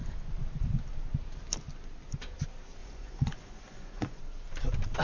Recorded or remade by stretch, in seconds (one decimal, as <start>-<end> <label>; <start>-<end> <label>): 0.0-2.8 recorded; 2.8-4.2 remade; 4.2-5.0 recorded